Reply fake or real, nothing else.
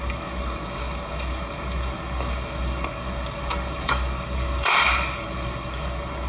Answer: fake